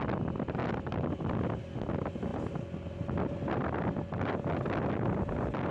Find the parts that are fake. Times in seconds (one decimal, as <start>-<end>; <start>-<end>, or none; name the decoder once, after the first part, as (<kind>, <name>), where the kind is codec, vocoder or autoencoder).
none